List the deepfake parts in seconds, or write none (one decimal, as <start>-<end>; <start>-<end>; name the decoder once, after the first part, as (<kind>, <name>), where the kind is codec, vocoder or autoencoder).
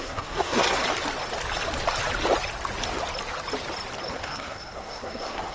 0.0-0.8 (codec, SNAC); 4.1-5.5